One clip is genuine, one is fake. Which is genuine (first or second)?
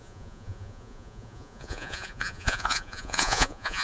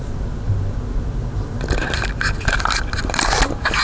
second